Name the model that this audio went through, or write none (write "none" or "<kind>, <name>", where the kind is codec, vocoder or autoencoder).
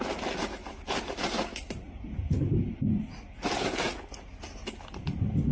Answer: none